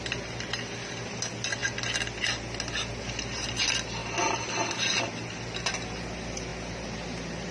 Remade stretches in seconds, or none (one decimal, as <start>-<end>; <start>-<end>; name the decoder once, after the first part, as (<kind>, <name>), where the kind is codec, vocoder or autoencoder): none